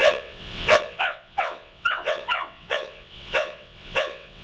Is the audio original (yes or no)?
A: no